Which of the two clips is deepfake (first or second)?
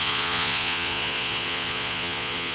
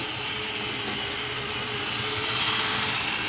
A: first